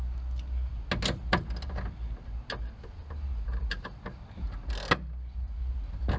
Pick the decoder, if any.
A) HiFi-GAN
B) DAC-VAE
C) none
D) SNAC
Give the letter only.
C